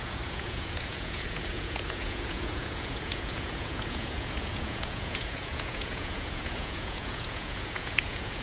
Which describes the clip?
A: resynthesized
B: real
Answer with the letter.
A